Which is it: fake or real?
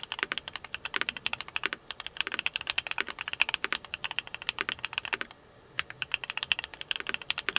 fake